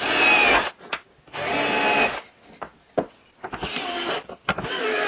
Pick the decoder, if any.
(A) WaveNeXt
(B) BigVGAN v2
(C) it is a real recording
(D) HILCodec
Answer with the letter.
C